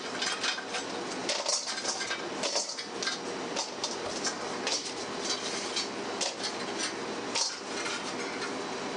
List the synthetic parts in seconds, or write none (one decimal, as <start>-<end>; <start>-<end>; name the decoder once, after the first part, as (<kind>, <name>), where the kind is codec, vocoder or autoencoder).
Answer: none